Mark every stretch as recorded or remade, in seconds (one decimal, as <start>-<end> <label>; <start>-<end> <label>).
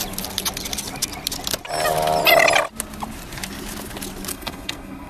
0.0-4.3 recorded; 4.3-5.1 remade